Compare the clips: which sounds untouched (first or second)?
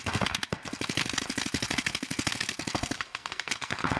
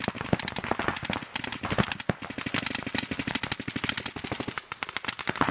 second